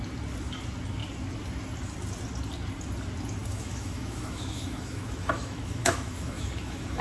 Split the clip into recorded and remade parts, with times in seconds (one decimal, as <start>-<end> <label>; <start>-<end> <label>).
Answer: 0.0-3.5 recorded; 3.5-7.0 remade